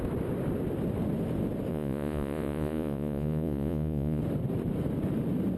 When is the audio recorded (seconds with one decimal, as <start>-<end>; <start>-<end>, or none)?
0.0-1.7; 4.2-5.6